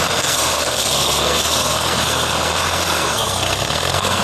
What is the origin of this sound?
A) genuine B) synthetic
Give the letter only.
B